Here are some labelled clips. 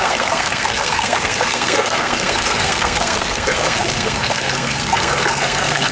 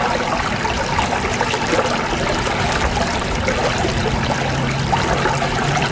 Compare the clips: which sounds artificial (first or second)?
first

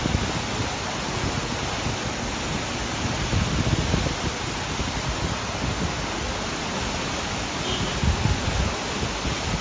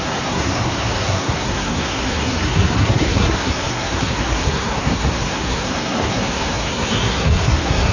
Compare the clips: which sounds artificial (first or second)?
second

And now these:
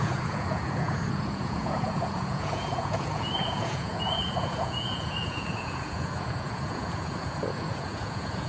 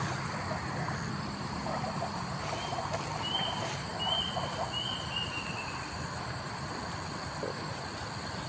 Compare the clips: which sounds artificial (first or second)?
first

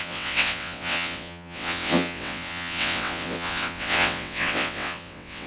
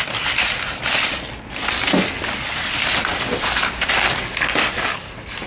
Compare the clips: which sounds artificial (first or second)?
first